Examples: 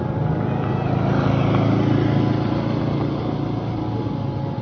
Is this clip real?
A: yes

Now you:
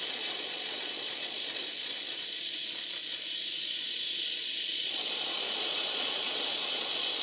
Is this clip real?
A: no